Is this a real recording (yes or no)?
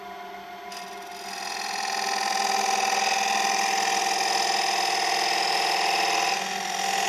yes